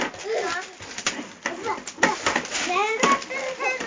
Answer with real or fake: real